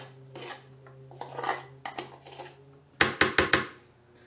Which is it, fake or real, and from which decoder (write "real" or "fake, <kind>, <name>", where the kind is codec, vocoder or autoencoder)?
real